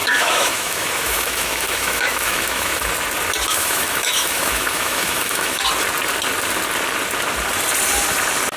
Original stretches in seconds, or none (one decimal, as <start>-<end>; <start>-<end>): 2.9-3.5; 5.6-8.6